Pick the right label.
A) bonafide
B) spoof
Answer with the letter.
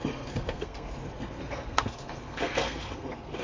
B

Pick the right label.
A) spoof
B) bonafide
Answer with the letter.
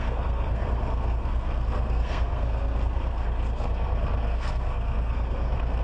A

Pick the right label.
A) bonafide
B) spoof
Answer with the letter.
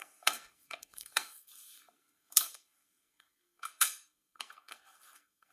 B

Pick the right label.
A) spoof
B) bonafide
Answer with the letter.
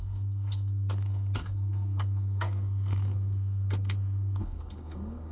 A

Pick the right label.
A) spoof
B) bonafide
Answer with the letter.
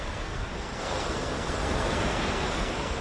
A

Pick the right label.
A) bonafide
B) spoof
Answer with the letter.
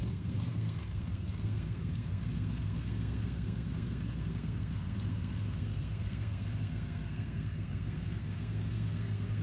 B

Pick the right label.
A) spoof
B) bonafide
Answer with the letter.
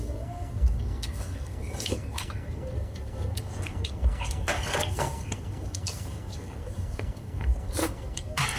A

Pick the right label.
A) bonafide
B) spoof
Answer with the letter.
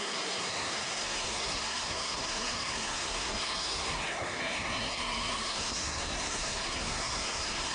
B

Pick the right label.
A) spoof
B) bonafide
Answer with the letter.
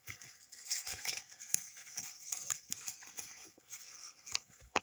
A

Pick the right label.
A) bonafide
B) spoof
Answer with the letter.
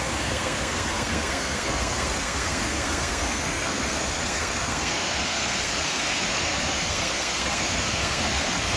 B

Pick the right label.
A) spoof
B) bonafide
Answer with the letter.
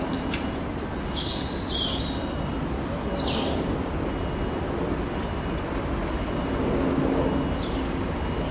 B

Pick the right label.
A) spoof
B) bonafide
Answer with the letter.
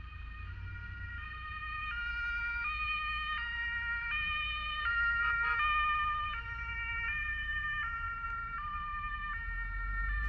B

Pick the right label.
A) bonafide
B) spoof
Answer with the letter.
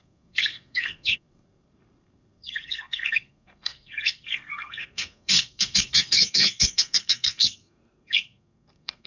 B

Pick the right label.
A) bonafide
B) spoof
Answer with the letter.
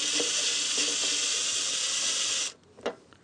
A